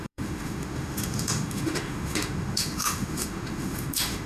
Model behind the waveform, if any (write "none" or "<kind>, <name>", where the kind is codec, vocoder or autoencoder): autoencoder, DAC-VAE